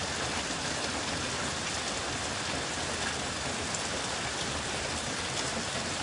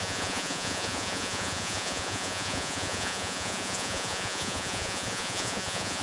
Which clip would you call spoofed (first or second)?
second